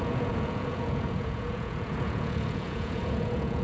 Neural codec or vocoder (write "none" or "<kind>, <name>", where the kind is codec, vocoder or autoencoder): vocoder, Vocos